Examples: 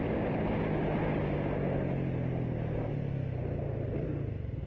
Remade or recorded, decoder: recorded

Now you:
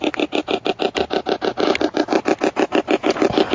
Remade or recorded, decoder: recorded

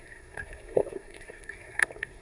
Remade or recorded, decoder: remade, codec, SNAC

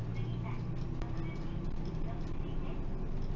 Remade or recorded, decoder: recorded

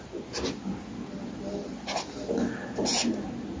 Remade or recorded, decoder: recorded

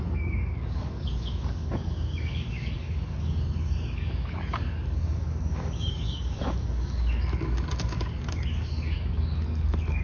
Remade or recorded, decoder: remade, codec, DAC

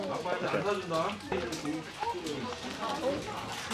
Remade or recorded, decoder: recorded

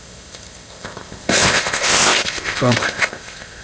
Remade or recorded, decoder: remade, codec, ZipCodec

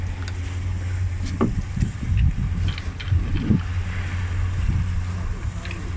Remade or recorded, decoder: recorded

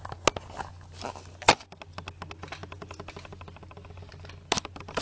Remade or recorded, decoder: recorded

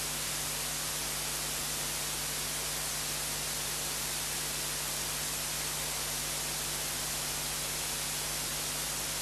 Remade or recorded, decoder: recorded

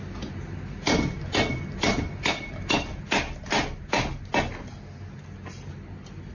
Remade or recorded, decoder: recorded